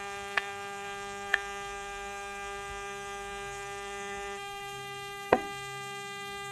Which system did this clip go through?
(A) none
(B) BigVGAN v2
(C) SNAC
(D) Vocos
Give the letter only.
C